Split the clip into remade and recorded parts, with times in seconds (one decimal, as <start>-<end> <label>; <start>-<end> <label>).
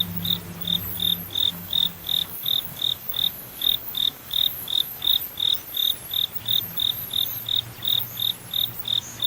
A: 0.0-1.5 recorded; 1.5-5.1 remade; 5.1-9.3 recorded